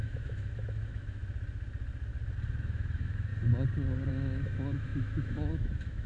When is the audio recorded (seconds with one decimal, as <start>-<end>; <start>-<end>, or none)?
1.2-2.6; 3.3-4.1